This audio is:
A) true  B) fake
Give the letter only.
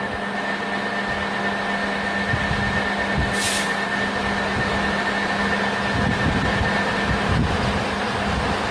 A